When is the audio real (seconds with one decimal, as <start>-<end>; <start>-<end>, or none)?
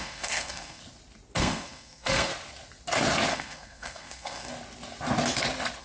0.8-1.4; 2.3-3.3; 4.5-5.8